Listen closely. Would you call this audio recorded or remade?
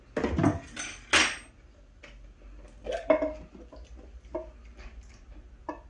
recorded